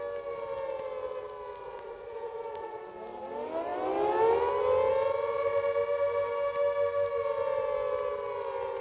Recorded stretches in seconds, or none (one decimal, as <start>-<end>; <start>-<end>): 0.0-1.6; 2.8-8.8